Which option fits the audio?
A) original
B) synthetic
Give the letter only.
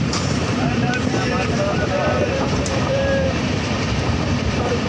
B